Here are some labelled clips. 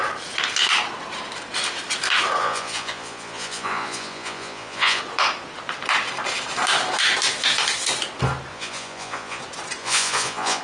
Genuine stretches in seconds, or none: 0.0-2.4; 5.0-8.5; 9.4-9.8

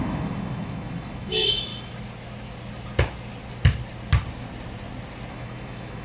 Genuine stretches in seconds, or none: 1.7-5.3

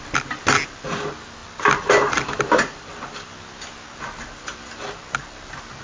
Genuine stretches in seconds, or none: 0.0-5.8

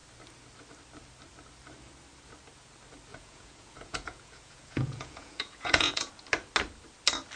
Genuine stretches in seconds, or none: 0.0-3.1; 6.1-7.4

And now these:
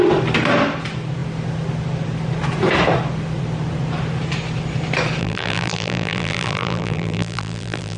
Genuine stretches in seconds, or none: 0.0-5.2